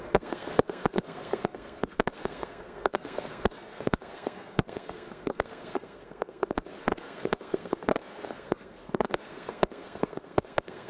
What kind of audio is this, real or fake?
fake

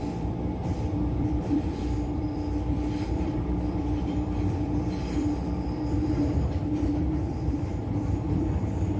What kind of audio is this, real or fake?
fake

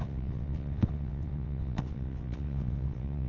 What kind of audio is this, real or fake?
fake